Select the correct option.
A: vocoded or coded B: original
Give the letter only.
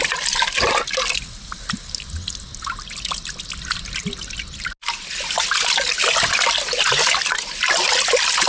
B